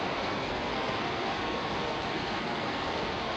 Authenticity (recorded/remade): remade